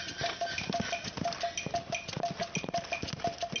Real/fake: real